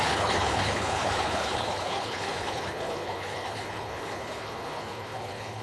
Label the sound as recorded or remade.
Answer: remade